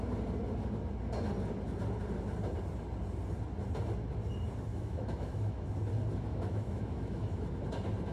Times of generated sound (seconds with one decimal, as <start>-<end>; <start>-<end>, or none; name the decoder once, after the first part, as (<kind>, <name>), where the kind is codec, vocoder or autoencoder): 4.7-5.7 (autoencoder, DAC-VAE); 6.3-7.6